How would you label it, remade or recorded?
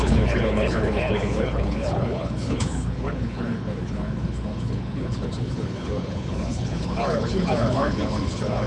remade